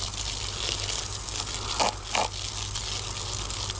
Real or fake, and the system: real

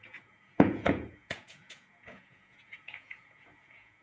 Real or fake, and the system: fake, vocoder, Vocos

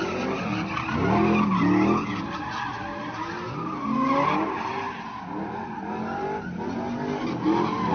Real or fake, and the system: real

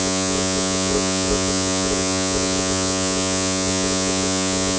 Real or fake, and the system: fake, vocoder, Vocos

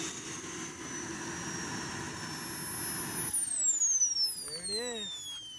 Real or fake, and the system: real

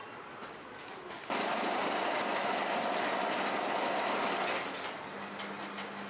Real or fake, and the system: real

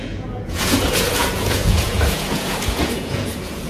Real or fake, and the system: fake, vocoder, Vocos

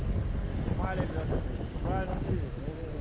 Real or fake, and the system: real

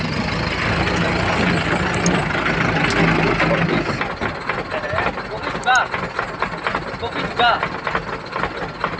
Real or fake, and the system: real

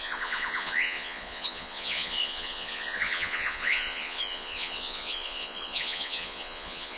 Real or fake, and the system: fake, vocoder, Vocos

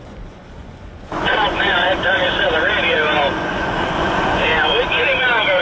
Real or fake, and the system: fake, vocoder, Vocos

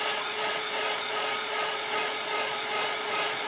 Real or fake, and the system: fake, vocoder, Vocos